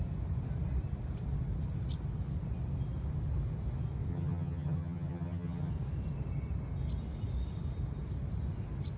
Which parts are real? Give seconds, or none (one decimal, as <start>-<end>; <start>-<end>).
0.0-4.1; 5.7-9.0